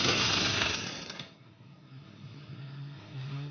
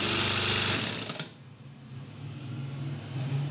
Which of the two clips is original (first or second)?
second